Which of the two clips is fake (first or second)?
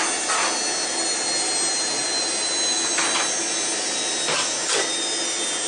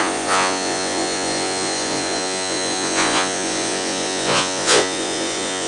second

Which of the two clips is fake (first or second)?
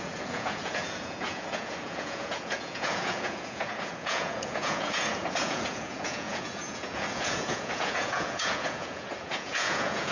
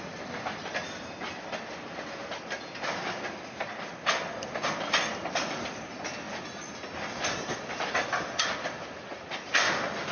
first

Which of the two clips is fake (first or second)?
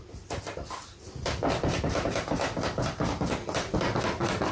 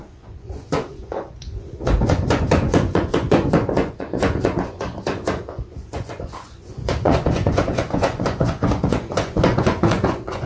second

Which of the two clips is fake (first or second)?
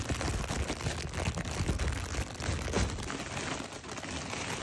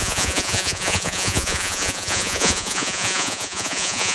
second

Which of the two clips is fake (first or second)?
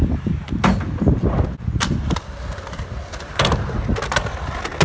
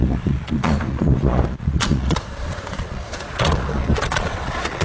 second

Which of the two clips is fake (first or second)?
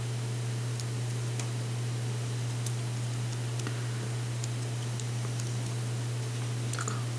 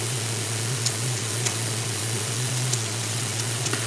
second